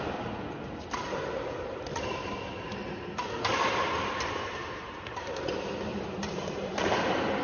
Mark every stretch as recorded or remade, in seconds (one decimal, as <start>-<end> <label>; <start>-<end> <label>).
0.0-4.6 recorded; 4.6-5.2 remade; 5.2-5.9 recorded; 5.9-6.8 remade; 6.8-7.4 recorded